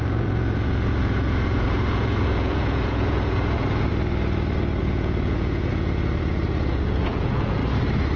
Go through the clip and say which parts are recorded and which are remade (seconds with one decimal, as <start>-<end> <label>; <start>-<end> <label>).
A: 0.0-3.9 remade; 3.9-4.8 recorded; 4.8-7.6 remade; 7.6-8.2 recorded